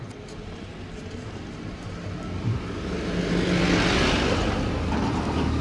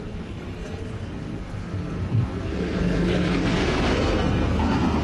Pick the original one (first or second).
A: first